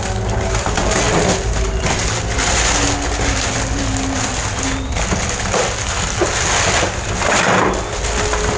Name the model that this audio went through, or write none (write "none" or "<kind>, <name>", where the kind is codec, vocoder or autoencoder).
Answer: none